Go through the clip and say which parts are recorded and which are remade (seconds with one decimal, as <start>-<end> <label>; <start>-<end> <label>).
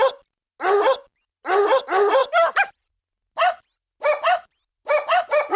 0.0-5.6 recorded